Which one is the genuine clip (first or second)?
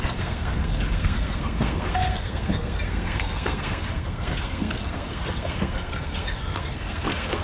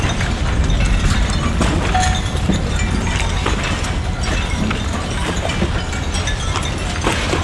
second